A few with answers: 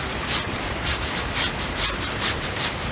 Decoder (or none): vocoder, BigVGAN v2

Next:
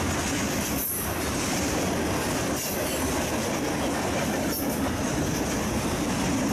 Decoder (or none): none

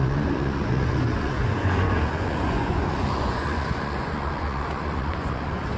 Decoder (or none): vocoder, Vocos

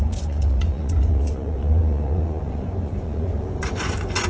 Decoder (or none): vocoder, Vocos